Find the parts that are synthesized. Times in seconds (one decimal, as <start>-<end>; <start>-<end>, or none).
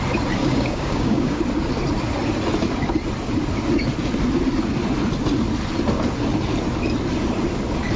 0.4-1.4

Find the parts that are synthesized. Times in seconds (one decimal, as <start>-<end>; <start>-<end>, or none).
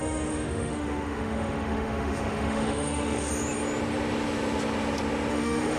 0.0-3.3; 5.3-5.8